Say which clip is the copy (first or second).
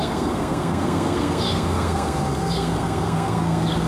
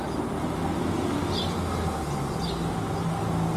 first